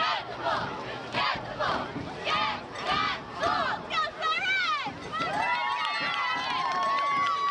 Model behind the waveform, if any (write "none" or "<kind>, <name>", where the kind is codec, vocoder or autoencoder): none